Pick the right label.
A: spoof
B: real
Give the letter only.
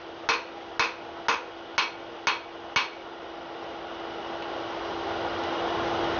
B